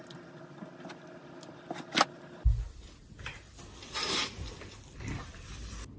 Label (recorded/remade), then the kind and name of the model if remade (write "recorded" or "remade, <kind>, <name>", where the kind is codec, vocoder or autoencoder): recorded